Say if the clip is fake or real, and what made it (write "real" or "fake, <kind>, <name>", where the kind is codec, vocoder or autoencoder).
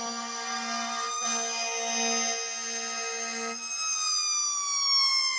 real